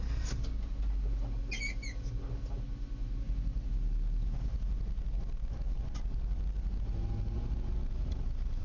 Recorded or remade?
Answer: recorded